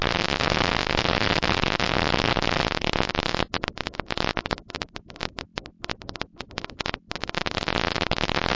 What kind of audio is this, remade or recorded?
recorded